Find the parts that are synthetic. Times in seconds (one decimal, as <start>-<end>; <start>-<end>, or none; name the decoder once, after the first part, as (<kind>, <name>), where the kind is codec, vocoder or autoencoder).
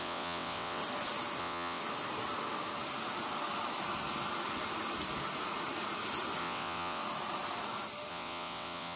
0.0-0.8 (vocoder, WaveNeXt); 1.4-1.8; 6.4-7.0; 8.1-9.0